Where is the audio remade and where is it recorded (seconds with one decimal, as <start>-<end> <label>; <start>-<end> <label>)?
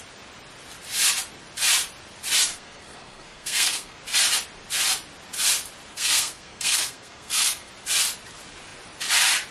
0.0-2.5 recorded; 2.5-4.0 remade; 4.0-5.9 recorded; 5.9-7.7 remade; 7.7-9.5 recorded